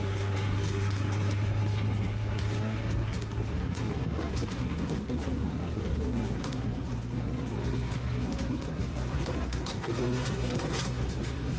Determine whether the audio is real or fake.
fake